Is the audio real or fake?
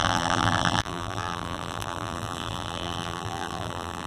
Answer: fake